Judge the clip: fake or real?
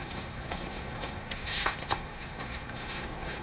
fake